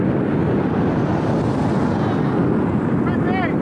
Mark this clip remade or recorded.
recorded